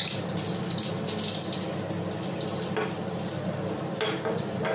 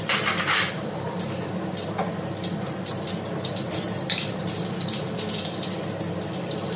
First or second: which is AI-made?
second